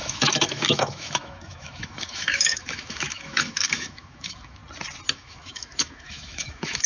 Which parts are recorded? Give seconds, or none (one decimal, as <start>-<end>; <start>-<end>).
4.6-5.1